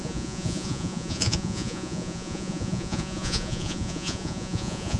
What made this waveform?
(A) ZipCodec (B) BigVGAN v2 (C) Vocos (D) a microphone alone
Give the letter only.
C